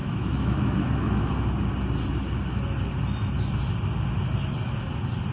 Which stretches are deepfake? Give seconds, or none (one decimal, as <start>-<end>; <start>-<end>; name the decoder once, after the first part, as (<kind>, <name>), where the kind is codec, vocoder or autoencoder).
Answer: 0.0-1.3 (autoencoder, DAC-VAE)